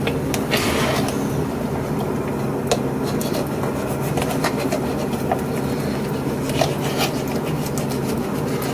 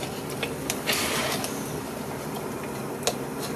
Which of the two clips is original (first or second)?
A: first